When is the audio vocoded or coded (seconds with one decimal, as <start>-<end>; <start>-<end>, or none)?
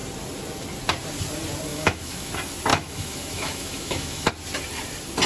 1.7-2.3; 2.7-4.3